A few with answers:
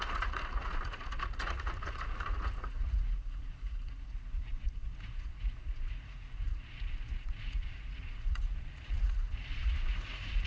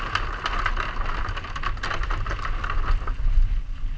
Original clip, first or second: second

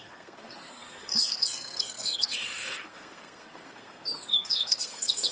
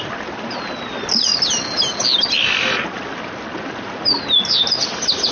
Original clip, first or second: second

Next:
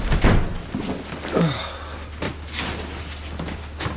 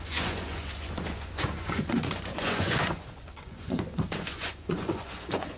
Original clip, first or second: first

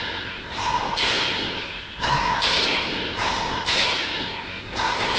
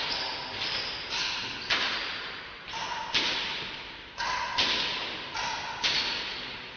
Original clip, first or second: second